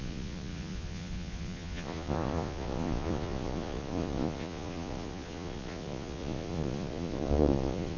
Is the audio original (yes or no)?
no